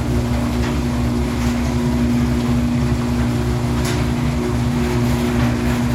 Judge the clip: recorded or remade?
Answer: recorded